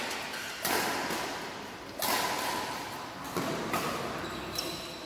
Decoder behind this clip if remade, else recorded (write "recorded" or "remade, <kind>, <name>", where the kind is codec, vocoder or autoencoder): recorded